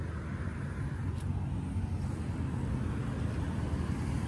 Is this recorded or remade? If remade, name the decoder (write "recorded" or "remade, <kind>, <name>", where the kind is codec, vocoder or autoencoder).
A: recorded